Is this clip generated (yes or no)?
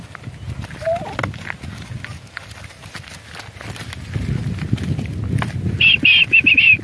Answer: no